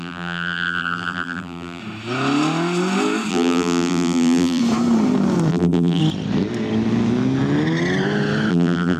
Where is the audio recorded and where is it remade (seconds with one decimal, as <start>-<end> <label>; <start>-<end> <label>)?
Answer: 0.0-1.8 remade; 1.8-3.3 recorded; 3.3-4.6 remade; 4.6-5.5 recorded; 5.5-6.0 remade; 6.0-8.5 recorded; 8.5-9.0 remade